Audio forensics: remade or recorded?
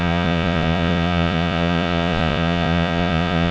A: remade